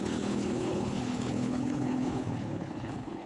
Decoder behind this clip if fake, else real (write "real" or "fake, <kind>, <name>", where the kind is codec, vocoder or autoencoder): fake, codec, HILCodec